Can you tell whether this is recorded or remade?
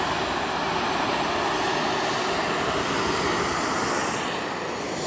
recorded